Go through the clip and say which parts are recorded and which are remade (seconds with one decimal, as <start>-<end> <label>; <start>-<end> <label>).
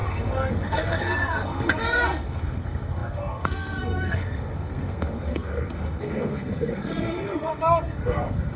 0.0-8.6 remade